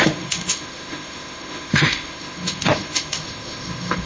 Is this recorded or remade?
remade